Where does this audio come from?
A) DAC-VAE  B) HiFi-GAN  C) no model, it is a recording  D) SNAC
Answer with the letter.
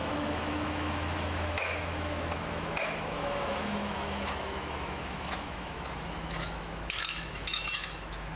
A